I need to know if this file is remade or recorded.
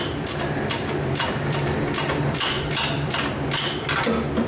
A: remade